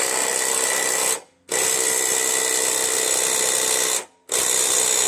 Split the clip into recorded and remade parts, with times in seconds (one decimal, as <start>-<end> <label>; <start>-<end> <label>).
0.0-5.1 recorded